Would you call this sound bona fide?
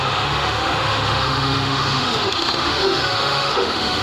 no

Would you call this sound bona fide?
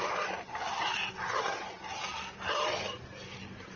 yes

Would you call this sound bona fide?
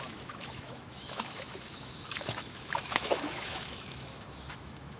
no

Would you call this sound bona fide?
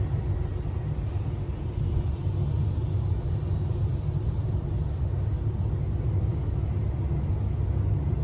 yes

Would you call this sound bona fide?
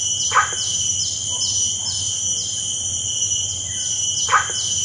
yes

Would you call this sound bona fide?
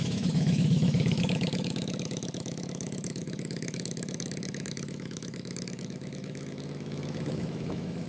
no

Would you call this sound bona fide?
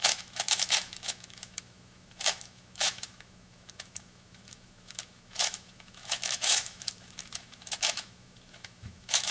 no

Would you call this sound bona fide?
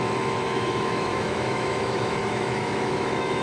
no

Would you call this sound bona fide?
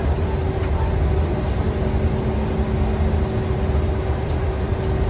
yes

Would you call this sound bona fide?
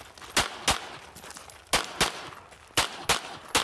yes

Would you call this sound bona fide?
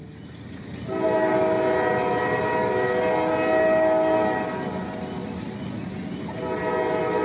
yes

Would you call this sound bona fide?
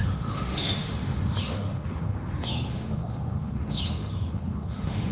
no